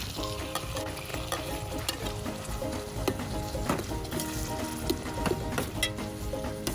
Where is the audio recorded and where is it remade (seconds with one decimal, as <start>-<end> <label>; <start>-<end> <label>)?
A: 0.0-1.1 recorded; 1.1-1.8 remade; 1.8-6.7 recorded